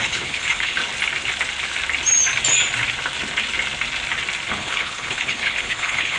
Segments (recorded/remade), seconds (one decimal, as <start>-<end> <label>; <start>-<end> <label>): 0.0-0.8 remade; 0.8-4.5 recorded; 4.5-6.2 remade